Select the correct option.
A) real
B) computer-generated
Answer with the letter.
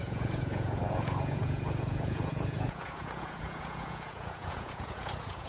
B